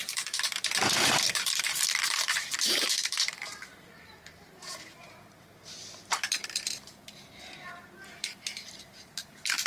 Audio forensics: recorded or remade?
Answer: remade